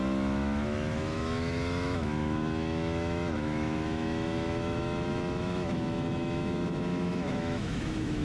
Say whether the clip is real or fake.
fake